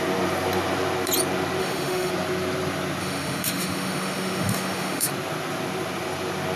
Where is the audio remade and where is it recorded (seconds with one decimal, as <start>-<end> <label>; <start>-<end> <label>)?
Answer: 0.0-1.6 recorded; 1.6-2.1 remade; 2.1-3.0 recorded; 3.0-5.1 remade; 5.1-6.6 recorded